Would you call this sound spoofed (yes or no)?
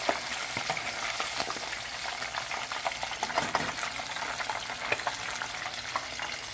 no